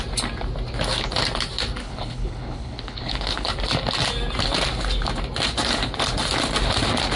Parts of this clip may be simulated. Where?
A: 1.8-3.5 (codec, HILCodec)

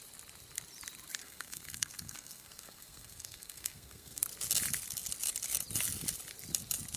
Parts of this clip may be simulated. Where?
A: 1.2-4.2 (codec, SNAC)

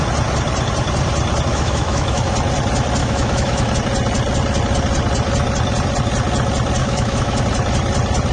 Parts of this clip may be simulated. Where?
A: 1.5-2.2 (autoencoder, DAC-VAE); 3.0-3.7; 6.8-7.4

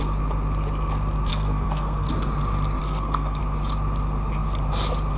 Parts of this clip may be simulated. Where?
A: 1.3-2.1 (codec, SNAC); 2.8-3.4